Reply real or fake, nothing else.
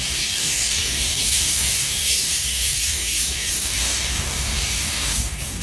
fake